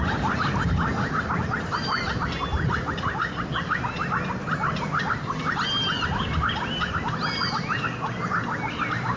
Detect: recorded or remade recorded